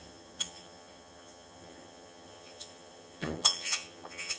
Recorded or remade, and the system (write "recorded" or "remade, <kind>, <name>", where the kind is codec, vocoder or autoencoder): remade, vocoder, HiFi-GAN